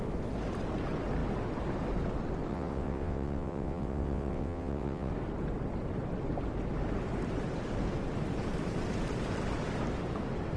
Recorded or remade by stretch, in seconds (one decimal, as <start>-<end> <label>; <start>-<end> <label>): 0.0-2.5 recorded; 2.5-5.1 remade; 5.1-10.6 recorded